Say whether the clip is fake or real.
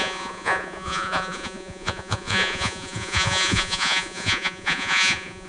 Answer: fake